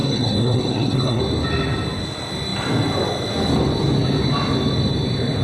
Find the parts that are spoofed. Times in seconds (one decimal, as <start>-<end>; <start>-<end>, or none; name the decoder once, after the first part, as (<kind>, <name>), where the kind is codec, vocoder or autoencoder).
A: 0.0-1.2 (codec, SNAC)